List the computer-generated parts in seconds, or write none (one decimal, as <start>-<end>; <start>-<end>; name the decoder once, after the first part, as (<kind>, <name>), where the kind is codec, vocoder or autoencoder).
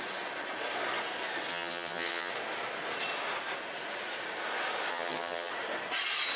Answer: 1.5-2.3 (vocoder, HiFi-GAN); 4.9-5.5